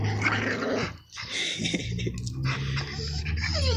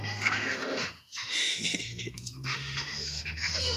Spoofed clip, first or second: second